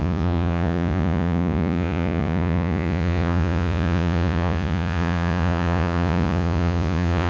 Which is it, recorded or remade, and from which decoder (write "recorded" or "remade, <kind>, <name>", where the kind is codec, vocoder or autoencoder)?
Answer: remade, vocoder, Vocos